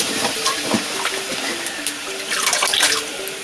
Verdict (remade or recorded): recorded